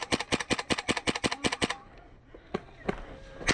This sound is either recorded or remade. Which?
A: recorded